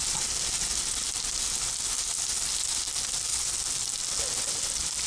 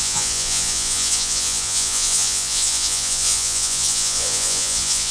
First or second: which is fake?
second